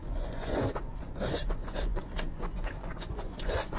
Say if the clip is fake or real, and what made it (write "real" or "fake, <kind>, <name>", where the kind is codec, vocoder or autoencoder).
fake, vocoder, Vocos